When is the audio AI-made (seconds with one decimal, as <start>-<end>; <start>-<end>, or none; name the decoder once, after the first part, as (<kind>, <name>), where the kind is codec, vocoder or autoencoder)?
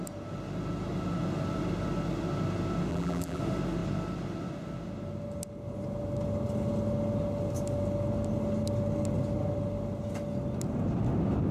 2.9-3.4 (vocoder, BigVGAN v2)